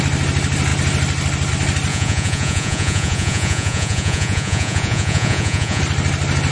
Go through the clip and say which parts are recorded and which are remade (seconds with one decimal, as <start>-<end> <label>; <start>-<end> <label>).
0.0-1.9 recorded; 1.9-5.8 remade; 5.8-6.5 recorded